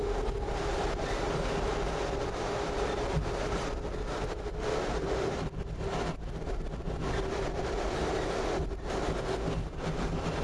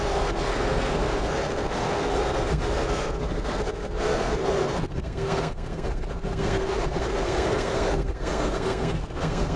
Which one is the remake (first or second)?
second